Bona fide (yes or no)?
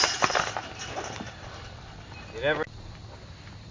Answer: yes